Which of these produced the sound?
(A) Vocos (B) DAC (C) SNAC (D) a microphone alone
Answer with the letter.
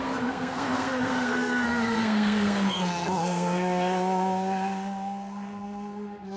C